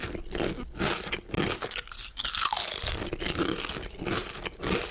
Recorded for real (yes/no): yes